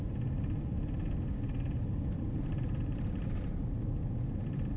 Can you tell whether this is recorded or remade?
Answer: remade